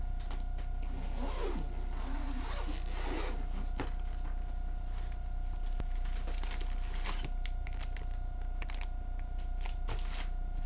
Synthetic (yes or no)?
no